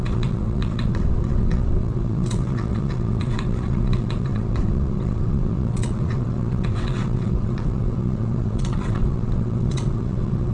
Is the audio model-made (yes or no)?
yes